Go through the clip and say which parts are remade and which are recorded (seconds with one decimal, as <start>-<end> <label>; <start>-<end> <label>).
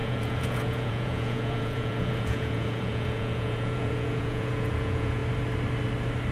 0.0-5.2 remade; 5.2-6.3 recorded